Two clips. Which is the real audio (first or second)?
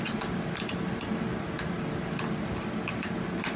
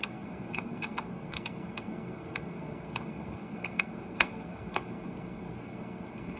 first